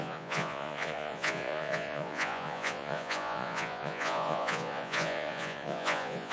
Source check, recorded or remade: remade